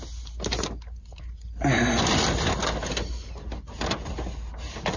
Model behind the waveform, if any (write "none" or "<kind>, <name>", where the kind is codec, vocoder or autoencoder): none